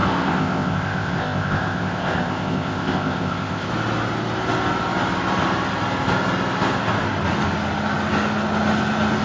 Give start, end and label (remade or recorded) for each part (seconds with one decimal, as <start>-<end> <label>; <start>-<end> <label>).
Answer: 0.0-3.7 remade; 3.7-9.2 recorded